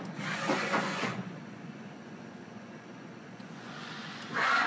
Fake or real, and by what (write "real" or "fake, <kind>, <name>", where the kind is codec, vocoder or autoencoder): fake, vocoder, Vocos